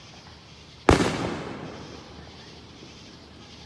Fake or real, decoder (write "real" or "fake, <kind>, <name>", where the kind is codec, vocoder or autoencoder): real